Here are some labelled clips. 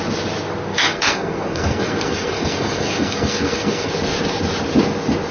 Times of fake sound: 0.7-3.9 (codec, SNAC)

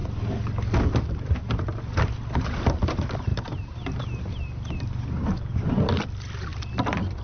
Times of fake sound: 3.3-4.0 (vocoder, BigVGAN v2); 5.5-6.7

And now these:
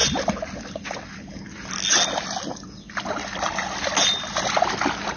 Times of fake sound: none

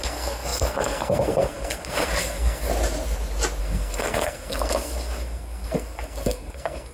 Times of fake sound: 0.0-2.7 (codec, SNAC); 3.6-6.9

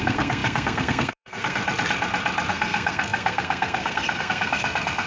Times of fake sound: 0.0-1.6 (codec, SNAC); 2.5-5.1